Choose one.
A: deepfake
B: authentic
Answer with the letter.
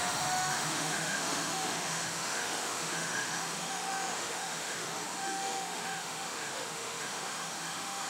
A